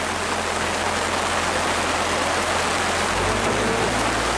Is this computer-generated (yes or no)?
no